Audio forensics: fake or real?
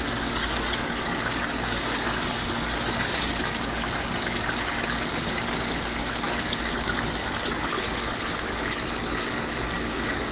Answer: fake